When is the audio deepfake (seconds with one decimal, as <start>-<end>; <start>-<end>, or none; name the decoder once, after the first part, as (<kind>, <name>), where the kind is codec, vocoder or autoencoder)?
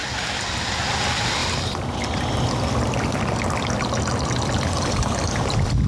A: none